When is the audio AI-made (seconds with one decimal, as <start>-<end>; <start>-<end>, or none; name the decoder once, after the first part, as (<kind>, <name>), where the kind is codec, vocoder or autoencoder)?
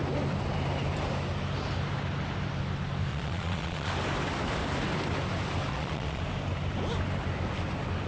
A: 3.1-3.9 (vocoder, Vocos); 5.7-6.2